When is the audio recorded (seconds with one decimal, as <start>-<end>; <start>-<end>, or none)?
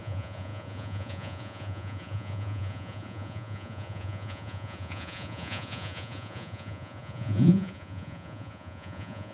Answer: none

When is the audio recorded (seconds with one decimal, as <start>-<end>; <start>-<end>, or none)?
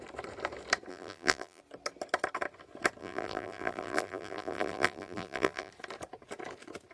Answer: 0.0-0.9; 1.6-3.0; 5.7-6.9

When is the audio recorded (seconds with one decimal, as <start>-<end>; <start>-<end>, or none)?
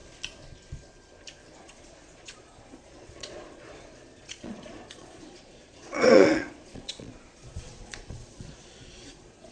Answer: 0.0-1.6